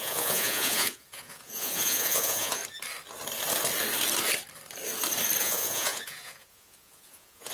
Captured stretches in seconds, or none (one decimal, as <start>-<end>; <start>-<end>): 2.6-5.4